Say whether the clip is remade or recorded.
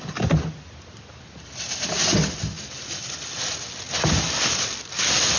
recorded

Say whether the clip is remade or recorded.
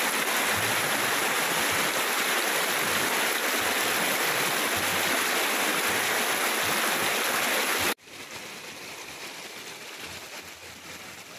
recorded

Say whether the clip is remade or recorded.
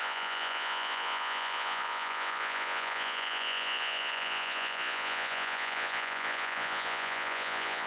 remade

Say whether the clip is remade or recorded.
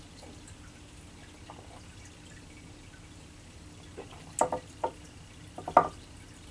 recorded